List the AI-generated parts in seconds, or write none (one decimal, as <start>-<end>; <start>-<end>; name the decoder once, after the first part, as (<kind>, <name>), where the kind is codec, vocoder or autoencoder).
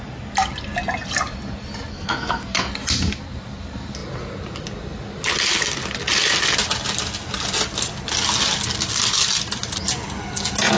1.9-2.7 (codec, SNAC)